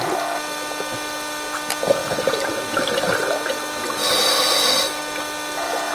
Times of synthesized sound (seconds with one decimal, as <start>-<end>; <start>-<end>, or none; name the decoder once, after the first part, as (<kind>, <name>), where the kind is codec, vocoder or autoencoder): 2.0-3.5 (vocoder, BigVGAN v2); 4.0-5.0